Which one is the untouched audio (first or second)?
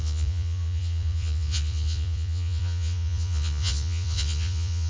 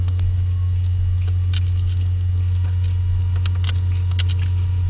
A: second